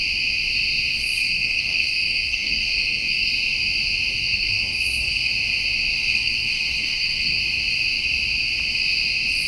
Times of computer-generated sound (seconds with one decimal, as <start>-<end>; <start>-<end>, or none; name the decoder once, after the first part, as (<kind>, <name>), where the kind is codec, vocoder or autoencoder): 0.9-3.3 (codec, SNAC); 4.1-5.3; 6.0-7.4